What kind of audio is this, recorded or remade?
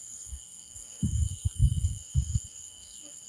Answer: remade